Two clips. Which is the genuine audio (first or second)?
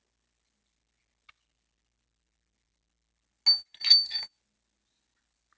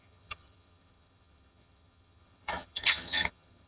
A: first